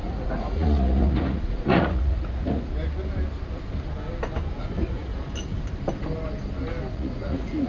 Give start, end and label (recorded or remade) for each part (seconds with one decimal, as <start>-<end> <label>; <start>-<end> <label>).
0.0-2.7 remade; 2.7-4.6 recorded; 4.6-5.1 remade; 5.1-6.9 recorded; 6.9-7.7 remade